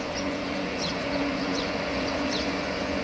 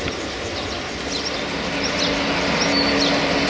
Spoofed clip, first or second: first